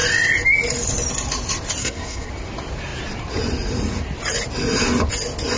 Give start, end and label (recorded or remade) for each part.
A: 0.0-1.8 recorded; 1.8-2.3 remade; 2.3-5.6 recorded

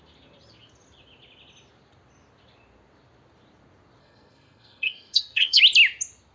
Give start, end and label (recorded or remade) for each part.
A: 0.0-4.0 recorded; 4.0-5.6 remade; 5.6-6.3 recorded

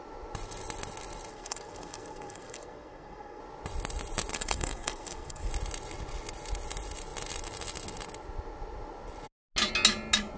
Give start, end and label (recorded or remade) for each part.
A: 0.0-1.3 recorded; 1.3-3.4 remade; 3.4-4.3 recorded; 4.3-5.5 remade; 5.5-10.4 recorded